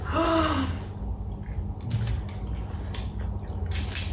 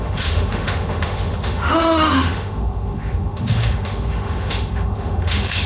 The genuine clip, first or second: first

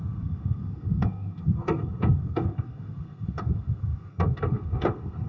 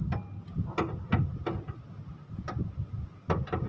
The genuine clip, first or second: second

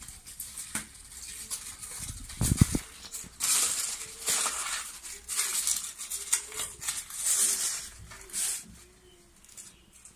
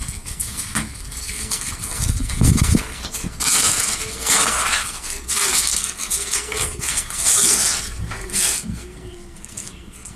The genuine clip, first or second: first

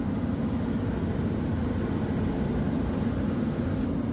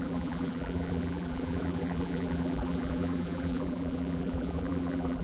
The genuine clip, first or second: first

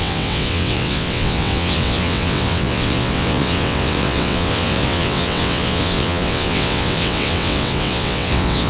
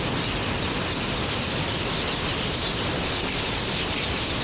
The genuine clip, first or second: second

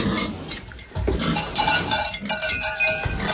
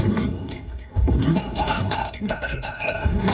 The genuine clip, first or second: first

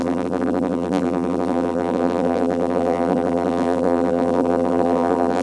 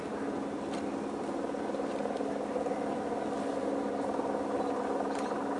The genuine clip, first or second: second